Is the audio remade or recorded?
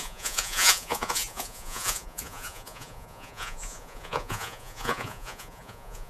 remade